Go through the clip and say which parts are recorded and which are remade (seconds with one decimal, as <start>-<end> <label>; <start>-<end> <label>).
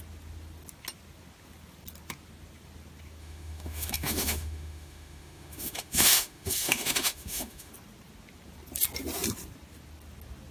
0.0-3.2 recorded; 3.2-7.7 remade; 7.7-10.5 recorded